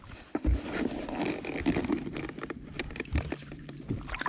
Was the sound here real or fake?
fake